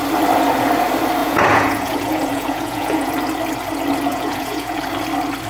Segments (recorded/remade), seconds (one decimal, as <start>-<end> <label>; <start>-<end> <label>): 0.0-1.2 recorded; 1.2-3.1 remade; 3.1-4.1 recorded; 4.1-4.8 remade; 4.8-5.5 recorded